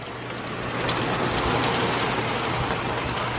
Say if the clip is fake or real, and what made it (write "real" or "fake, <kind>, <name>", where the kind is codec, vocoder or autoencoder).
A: real